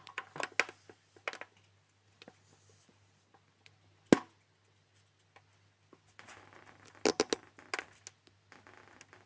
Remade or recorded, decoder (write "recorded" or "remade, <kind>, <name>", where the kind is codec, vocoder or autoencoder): recorded